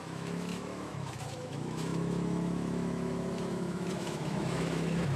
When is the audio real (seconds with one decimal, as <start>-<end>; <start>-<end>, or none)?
none